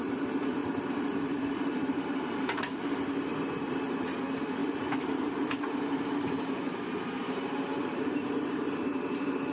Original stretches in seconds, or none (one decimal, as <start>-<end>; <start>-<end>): 0.0-0.6; 2.8-3.3; 4.0-4.6; 8.6-9.5